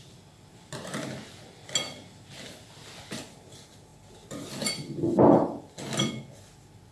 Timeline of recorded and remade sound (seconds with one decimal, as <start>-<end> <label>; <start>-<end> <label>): 0.0-6.9 recorded